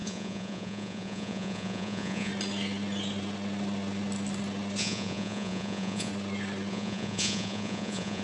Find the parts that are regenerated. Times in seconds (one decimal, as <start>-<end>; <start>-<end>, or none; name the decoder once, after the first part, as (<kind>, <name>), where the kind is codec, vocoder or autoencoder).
0.0-2.3 (vocoder, Vocos); 4.8-6.1; 6.7-8.2

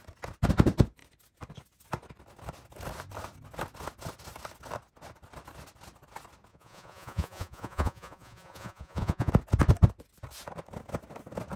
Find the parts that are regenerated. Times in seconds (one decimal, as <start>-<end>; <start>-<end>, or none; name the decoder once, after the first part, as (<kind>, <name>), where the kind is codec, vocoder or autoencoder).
6.5-9.3 (vocoder, Vocos)

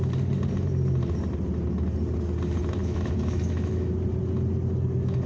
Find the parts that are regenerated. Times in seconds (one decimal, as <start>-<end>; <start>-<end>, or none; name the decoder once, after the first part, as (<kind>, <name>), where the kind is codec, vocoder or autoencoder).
2.8-3.9 (autoencoder, DAC-VAE)

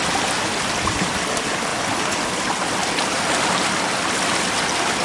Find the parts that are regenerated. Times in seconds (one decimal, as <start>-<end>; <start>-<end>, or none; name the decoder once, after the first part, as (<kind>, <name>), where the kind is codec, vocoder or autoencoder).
none

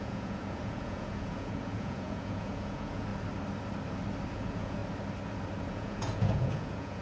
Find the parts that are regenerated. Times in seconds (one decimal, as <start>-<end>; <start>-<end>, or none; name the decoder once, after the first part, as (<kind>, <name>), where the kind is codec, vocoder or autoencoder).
0.0-3.1 (vocoder, Vocos); 4.3-4.8; 5.6-7.0

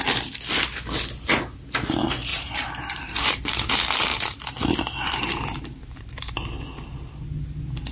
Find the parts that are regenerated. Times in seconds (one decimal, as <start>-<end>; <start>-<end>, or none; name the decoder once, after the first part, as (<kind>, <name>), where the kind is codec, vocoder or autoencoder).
2.3-3.1 (vocoder, BigVGAN v2); 4.1-6.3

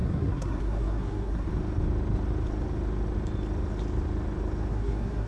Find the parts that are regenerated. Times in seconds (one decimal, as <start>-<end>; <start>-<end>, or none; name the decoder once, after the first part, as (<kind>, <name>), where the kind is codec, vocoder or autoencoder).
0.0-1.5 (codec, SNAC); 4.7-5.3

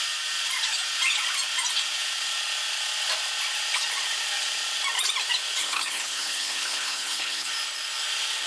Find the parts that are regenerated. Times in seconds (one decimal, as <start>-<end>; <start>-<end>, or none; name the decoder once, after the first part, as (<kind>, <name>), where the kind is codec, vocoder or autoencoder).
5.6-7.5 (codec, HILCodec)